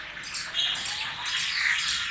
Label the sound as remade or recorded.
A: recorded